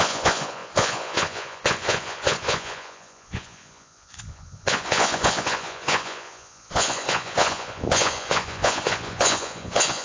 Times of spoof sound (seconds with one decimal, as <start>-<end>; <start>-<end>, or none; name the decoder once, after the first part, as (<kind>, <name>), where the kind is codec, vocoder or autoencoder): 0.0-10.0 (vocoder, Vocos)